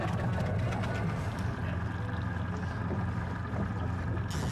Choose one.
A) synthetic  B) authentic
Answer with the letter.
B